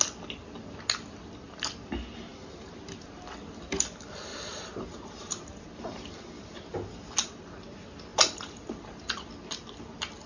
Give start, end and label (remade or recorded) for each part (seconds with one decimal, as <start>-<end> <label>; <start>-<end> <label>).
0.0-4.3 recorded; 4.3-5.7 remade; 5.7-8.1 recorded; 8.1-9.1 remade; 9.1-10.3 recorded